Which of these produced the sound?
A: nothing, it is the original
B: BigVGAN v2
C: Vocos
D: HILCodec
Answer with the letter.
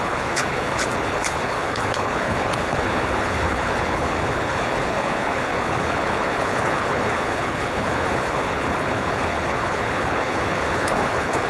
D